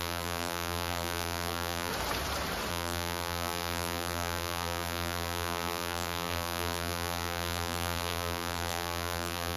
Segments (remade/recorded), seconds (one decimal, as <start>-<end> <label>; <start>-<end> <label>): 0.0-1.9 remade; 1.9-2.7 recorded; 2.7-9.6 remade